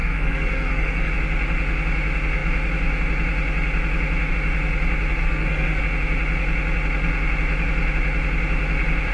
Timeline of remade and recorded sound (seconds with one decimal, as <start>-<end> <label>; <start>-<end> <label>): 0.0-1.1 remade; 1.1-5.2 recorded; 5.2-5.8 remade; 5.8-9.1 recorded